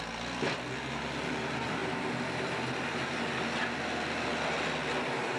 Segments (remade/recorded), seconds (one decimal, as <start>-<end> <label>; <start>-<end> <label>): 0.0-5.4 recorded